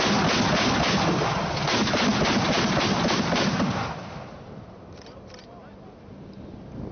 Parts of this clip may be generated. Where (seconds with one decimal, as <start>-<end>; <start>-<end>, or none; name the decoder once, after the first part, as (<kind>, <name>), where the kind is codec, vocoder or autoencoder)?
none